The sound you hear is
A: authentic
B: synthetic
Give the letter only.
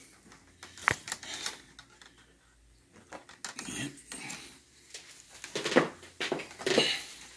A